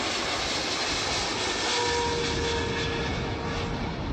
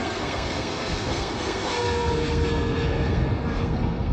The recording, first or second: first